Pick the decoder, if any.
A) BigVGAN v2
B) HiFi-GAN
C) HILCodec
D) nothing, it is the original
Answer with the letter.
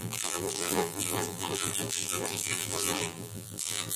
A